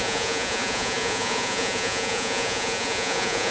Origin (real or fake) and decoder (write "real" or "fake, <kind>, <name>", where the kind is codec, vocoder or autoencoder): fake, vocoder, Vocos